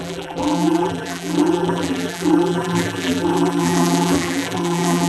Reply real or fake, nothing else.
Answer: fake